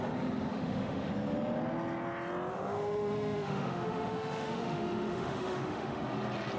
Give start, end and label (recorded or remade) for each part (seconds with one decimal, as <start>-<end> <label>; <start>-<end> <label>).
0.0-0.5 recorded; 0.5-1.1 remade; 1.1-2.5 recorded; 2.5-6.0 remade; 6.0-6.6 recorded